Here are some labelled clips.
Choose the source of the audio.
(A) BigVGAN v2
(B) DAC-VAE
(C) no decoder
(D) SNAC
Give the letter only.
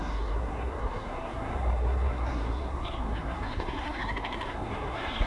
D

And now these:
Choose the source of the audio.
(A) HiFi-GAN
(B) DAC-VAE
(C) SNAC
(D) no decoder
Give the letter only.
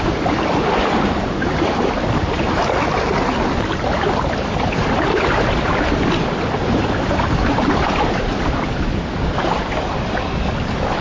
D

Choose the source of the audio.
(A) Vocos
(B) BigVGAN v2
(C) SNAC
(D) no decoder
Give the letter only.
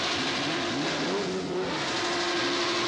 D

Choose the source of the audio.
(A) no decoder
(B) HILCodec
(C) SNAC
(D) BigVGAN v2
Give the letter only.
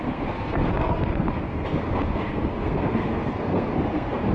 C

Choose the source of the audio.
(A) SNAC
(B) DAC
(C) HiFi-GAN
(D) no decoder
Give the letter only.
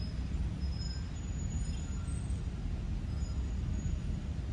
D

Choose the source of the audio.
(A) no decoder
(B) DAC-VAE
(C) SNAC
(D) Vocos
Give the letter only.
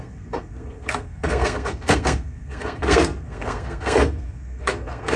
C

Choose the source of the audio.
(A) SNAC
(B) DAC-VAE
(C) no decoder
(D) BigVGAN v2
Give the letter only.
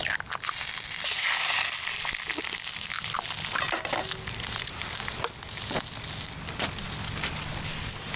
C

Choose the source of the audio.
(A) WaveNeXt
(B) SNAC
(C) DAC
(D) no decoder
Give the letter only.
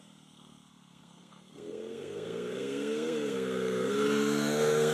B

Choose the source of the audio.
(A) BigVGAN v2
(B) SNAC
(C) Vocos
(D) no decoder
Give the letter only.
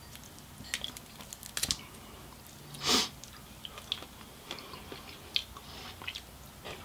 D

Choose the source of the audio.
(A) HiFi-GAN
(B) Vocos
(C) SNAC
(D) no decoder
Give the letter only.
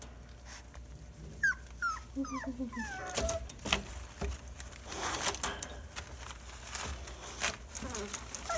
D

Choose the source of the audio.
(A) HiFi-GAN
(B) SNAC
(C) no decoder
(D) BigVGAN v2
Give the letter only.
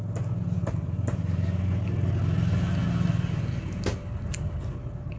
C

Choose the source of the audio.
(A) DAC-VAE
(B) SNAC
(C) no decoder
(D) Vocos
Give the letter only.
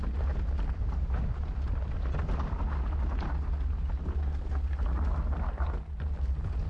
C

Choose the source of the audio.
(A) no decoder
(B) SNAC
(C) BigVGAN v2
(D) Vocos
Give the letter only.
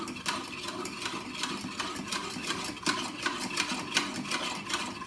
A